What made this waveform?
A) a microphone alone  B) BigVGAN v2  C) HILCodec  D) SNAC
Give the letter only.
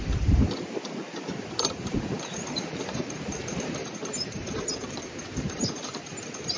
B